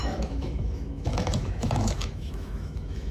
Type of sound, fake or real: fake